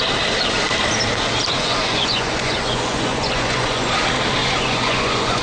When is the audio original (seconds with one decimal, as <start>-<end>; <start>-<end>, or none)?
0.0-1.5; 3.9-4.4